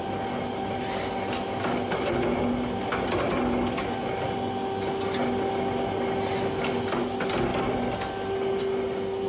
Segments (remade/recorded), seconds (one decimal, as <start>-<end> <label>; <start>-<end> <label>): 0.0-9.3 recorded